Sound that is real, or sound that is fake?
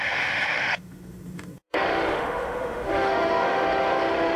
fake